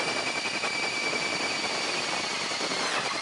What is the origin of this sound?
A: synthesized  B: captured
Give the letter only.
B